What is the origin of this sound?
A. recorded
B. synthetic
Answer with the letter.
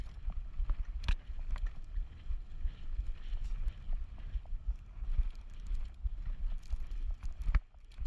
A